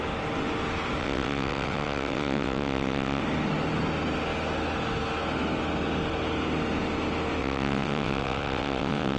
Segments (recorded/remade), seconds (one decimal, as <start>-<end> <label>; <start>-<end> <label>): 0.0-1.0 recorded; 1.0-3.2 remade; 3.2-7.4 recorded; 7.4-9.2 remade